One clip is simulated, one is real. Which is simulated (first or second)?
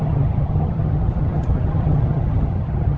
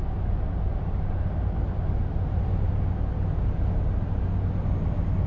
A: first